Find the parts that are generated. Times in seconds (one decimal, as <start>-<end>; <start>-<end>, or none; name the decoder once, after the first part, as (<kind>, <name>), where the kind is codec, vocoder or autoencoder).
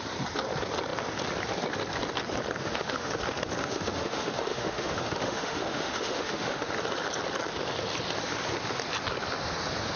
2.6-3.1 (autoencoder, DAC-VAE); 3.6-6.7